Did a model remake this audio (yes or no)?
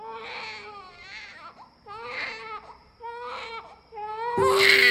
no